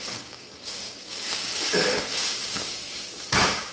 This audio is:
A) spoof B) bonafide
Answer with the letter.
A